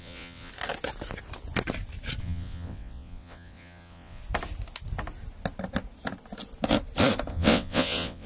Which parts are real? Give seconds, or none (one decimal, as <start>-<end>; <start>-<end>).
0.5-2.2; 4.2-7.3